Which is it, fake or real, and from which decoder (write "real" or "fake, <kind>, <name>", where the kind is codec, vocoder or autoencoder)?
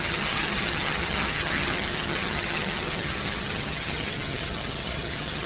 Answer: fake, vocoder, HiFi-GAN